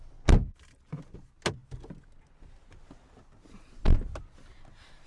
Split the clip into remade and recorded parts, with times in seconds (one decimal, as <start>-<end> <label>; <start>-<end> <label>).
0.0-5.1 recorded